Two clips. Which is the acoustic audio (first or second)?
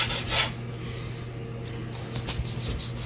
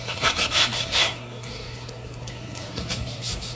first